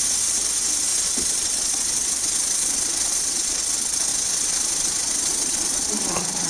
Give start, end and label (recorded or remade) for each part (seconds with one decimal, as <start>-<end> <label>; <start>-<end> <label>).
0.0-0.9 recorded; 0.9-3.6 remade; 3.6-4.1 recorded; 4.1-6.5 remade